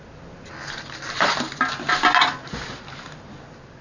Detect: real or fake real